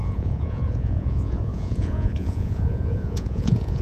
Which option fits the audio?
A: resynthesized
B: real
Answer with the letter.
A